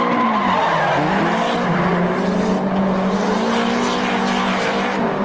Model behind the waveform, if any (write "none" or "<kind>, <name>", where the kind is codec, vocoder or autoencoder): none